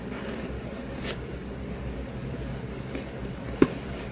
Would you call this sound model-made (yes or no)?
yes